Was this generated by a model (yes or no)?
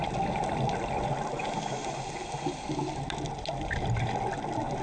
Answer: no